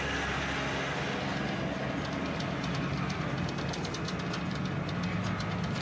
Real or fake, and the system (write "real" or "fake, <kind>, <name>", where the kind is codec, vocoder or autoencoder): real